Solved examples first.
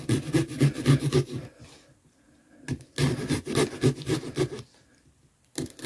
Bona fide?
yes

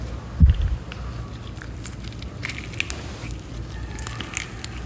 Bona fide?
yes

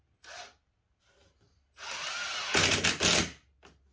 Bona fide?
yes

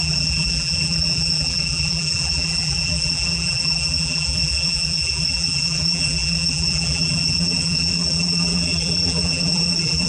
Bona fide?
no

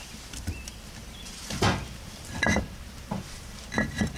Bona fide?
no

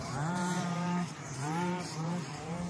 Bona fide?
no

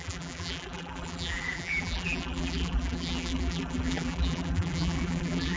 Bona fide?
no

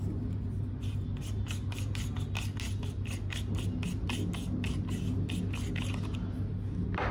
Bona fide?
yes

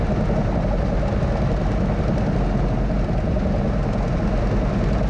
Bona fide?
yes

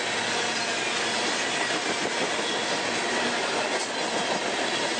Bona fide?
yes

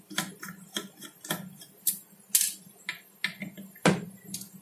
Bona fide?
yes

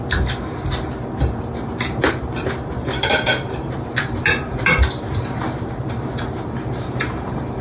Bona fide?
no